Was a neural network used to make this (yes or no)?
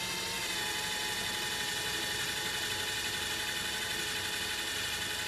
no